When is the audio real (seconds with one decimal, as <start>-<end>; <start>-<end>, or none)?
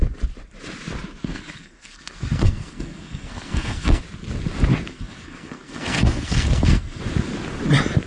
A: 0.0-1.2; 4.0-4.9; 7.0-8.1